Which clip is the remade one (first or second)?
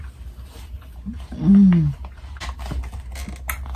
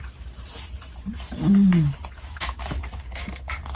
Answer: second